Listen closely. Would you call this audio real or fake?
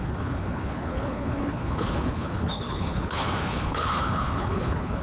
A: fake